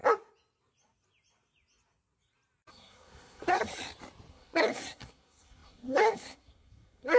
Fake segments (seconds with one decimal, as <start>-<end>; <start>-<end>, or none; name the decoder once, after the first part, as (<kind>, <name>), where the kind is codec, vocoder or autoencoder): 2.7-3.7 (codec, SNAC); 4.3-7.2